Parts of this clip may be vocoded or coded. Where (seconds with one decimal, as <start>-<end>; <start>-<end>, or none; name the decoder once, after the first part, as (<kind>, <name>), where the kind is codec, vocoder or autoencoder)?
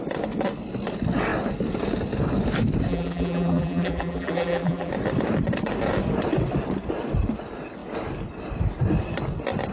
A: 2.9-4.9 (vocoder, BigVGAN v2)